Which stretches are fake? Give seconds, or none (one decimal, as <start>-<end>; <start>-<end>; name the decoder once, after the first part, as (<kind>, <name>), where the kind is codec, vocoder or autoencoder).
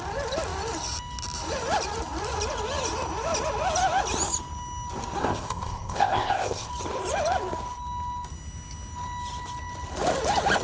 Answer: 5.2-6.7 (codec, ZipCodec)